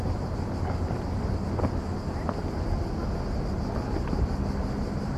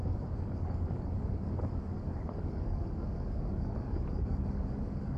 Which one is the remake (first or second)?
second